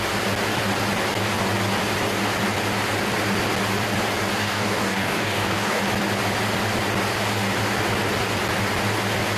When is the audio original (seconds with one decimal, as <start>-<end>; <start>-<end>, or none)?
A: 0.0-4.4; 5.8-9.4

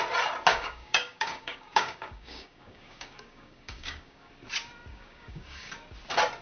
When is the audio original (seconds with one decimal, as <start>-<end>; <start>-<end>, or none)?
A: 0.0-0.5; 4.3-4.9; 5.7-6.4

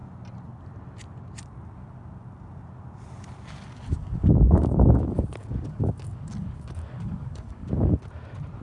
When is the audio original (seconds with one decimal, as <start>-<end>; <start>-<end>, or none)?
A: 0.0-3.9; 8.0-8.6

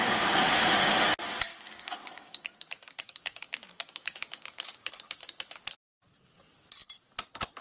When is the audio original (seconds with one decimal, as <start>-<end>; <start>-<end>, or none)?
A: 0.6-1.5; 4.9-7.6

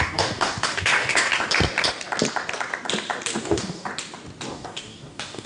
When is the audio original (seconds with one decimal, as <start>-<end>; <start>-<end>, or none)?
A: 1.3-3.4; 3.9-4.5

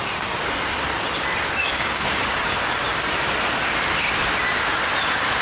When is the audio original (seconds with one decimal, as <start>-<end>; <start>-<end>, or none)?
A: 0.0-1.6; 2.1-5.4